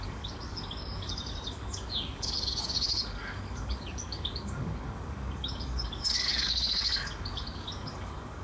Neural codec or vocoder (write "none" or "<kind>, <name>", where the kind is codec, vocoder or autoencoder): codec, DAC